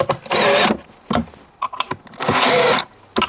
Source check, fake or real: real